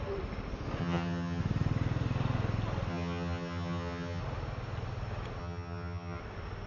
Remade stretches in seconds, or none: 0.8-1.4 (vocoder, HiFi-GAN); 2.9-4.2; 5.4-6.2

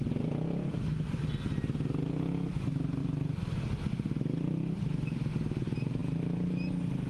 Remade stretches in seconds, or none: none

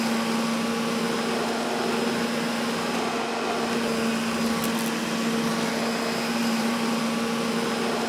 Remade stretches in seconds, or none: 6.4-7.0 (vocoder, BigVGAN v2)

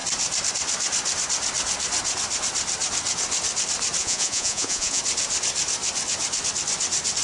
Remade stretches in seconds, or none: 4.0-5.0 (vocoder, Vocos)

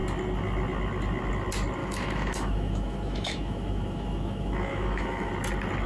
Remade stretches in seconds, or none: 1.8-5.3 (autoencoder, DAC-VAE)

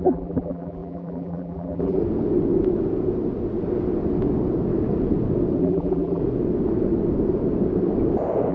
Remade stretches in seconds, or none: 0.0-2.0 (vocoder, BigVGAN v2); 5.6-6.2

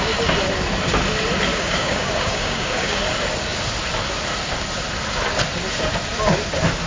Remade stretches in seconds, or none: 1.5-3.0 (codec, DAC)

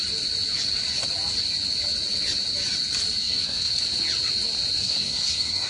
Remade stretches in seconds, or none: 3.2-3.7 (codec, SNAC); 4.8-5.7